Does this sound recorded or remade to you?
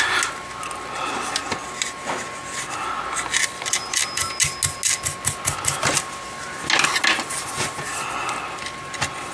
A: recorded